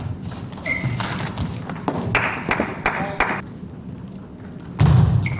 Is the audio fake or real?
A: real